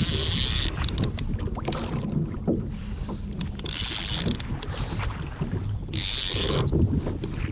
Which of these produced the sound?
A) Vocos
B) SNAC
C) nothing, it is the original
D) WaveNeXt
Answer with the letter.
C